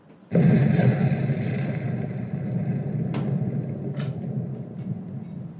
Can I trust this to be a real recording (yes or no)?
yes